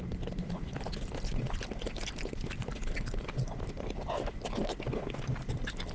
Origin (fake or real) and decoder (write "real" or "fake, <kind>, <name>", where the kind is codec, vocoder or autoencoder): real